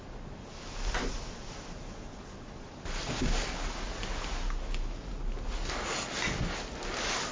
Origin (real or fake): real